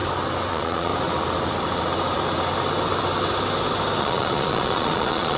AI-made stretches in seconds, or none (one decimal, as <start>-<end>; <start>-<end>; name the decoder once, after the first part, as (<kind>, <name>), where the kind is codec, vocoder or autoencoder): 0.5-0.9 (vocoder, Vocos); 4.0-5.4